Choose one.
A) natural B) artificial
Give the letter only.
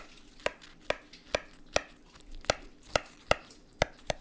A